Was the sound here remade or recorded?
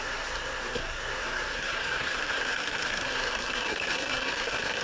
remade